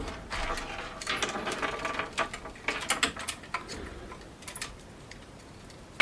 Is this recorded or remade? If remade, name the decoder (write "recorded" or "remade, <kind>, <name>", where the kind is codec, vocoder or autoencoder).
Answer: recorded